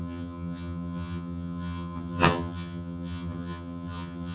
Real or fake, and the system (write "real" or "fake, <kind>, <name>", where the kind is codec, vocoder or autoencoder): fake, vocoder, HiFi-GAN